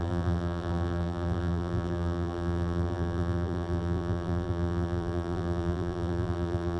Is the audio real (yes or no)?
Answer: no